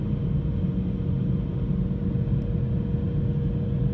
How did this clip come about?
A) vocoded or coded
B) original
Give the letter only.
B